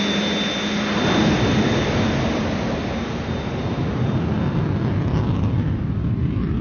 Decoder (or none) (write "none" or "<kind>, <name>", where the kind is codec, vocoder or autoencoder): none